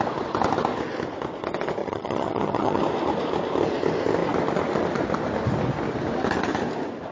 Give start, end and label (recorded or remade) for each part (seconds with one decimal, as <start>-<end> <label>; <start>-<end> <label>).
0.0-1.8 recorded; 1.8-2.8 remade; 2.8-7.1 recorded

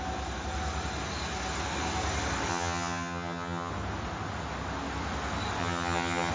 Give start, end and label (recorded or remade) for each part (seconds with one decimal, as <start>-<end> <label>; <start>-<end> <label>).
0.0-2.5 recorded; 2.5-3.7 remade; 3.7-5.6 recorded; 5.6-6.3 remade

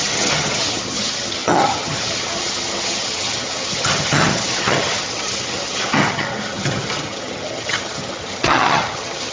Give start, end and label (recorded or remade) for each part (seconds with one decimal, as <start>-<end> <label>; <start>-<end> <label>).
0.0-9.3 remade

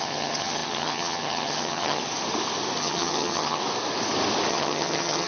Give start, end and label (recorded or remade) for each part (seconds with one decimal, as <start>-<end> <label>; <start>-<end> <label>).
0.0-2.0 remade; 2.0-2.8 recorded; 2.8-3.6 remade; 3.6-4.5 recorded; 4.5-5.3 remade

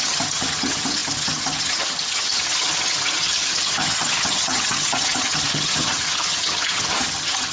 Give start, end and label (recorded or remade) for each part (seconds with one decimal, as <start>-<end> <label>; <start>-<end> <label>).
0.0-7.5 remade

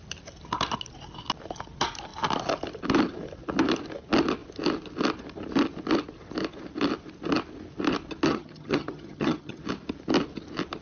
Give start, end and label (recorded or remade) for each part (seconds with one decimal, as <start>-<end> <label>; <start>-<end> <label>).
0.0-8.3 recorded; 8.3-9.6 remade; 9.6-10.8 recorded

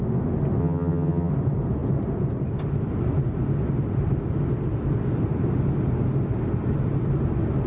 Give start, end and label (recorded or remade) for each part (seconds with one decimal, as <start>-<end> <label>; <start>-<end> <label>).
0.0-0.6 recorded; 0.6-1.3 remade; 1.3-7.7 recorded